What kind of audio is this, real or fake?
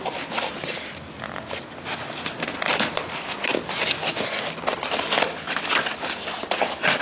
real